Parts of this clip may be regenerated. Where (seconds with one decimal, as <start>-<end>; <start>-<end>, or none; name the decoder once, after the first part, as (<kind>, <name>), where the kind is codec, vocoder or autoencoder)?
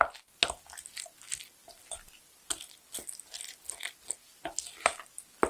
none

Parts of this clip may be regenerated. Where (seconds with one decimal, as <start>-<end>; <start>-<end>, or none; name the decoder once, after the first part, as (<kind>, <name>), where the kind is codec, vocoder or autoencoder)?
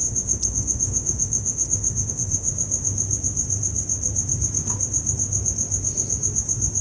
0.0-2.5 (autoencoder, DAC-VAE)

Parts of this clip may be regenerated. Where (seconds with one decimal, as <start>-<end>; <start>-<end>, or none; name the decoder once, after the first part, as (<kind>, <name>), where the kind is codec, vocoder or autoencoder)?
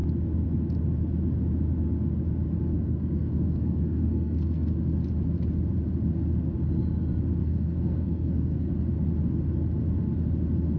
2.7-4.7 (codec, SNAC); 7.4-8.7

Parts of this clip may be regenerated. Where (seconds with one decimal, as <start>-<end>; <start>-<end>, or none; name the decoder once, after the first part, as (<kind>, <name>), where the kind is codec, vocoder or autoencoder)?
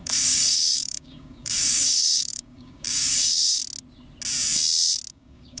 0.0-3.6 (codec, DAC); 5.1-5.6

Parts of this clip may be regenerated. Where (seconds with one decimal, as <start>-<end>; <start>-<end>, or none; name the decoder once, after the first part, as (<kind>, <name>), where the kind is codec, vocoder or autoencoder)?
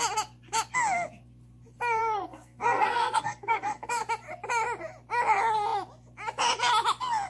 2.0-4.0 (codec, SNAC)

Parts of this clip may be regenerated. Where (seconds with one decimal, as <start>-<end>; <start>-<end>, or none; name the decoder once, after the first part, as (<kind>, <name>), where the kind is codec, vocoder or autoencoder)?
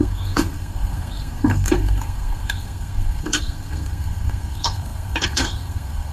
0.0-6.1 (codec, SNAC)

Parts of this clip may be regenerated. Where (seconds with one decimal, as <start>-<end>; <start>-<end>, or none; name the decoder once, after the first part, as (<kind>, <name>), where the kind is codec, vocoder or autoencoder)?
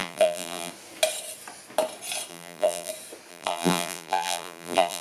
0.0-0.7 (vocoder, BigVGAN v2); 2.3-2.9; 3.3-5.0